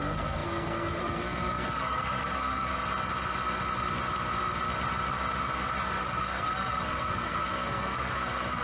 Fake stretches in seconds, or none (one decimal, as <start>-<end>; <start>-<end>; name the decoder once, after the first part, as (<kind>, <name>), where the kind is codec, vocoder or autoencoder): 0.0-2.7 (codec, SNAC); 6.0-8.6